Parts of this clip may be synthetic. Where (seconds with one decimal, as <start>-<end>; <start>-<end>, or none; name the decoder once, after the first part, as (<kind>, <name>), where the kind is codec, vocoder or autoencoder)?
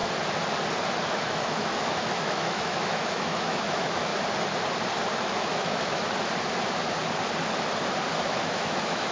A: 1.1-4.1 (autoencoder, DAC-VAE); 5.2-6.0; 8.2-9.1